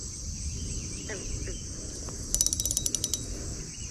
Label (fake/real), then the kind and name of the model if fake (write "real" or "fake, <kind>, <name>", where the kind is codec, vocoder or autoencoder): real